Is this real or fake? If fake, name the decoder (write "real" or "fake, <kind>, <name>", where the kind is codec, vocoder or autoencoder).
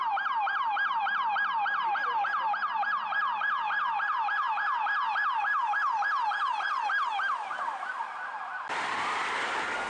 fake, vocoder, BigVGAN v2